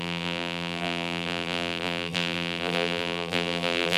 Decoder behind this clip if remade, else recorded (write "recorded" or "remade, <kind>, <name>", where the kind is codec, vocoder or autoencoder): remade, vocoder, BigVGAN v2